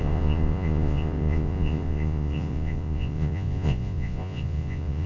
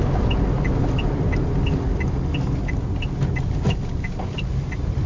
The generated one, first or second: first